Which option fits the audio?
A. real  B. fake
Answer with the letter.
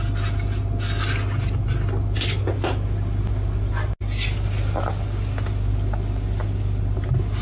A